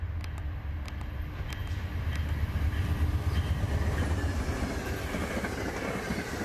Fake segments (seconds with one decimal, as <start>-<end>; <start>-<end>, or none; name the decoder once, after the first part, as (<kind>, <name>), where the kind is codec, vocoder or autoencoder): none